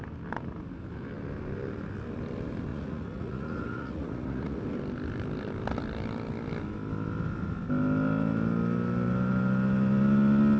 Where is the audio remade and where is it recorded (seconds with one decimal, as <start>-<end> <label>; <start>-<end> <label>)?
0.0-2.7 recorded; 2.7-4.6 remade; 4.6-10.6 recorded